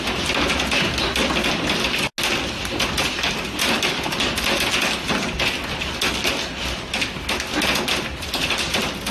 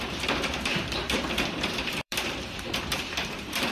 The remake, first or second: second